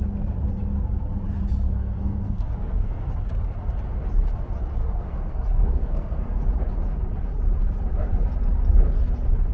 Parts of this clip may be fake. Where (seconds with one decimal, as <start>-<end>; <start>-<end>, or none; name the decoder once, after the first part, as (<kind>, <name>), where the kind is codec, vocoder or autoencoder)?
1.7-3.1 (codec, SNAC); 4.8-6.4